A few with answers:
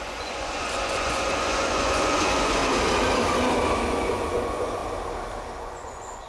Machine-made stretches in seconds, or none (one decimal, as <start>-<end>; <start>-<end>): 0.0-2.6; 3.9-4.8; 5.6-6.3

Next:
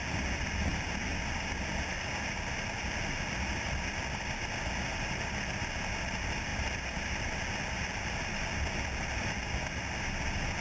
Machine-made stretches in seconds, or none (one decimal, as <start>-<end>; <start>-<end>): 4.9-5.6; 6.5-7.4

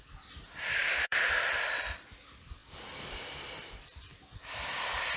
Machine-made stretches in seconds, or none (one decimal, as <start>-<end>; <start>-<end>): 0.8-1.3